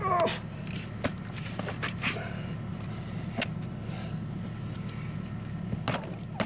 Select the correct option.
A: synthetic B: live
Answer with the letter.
B